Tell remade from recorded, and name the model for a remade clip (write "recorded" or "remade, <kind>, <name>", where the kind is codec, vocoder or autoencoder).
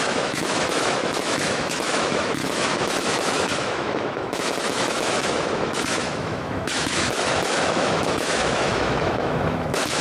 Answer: remade, autoencoder, DAC-VAE